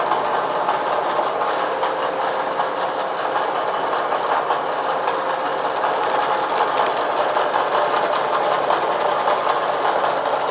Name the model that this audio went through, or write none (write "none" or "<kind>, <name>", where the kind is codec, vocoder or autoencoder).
none